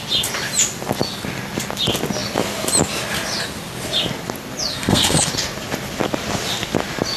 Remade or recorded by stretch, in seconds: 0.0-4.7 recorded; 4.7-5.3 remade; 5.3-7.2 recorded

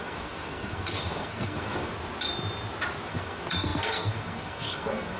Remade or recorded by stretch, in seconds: 0.0-1.9 remade; 1.9-3.1 recorded; 3.1-5.2 remade

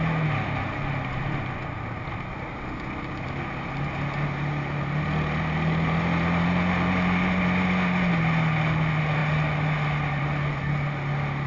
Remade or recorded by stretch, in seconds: 0.0-11.5 recorded

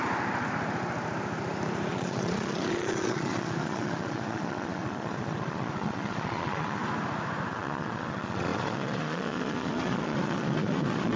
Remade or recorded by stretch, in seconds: 0.0-1.9 recorded; 1.9-6.8 remade; 6.8-7.5 recorded; 7.5-11.2 remade

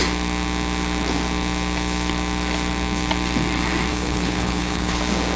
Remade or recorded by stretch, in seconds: 0.0-3.9 recorded; 3.9-5.0 remade; 5.0-5.4 recorded

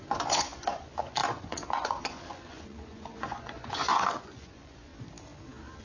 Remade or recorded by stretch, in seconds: 0.0-4.9 remade; 4.9-5.8 recorded